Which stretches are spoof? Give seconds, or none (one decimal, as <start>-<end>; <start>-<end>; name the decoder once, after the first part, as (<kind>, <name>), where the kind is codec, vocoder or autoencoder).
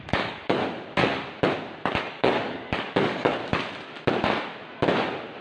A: 0.0-0.6 (codec, DAC); 2.0-3.4